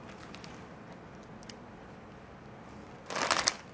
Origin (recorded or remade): recorded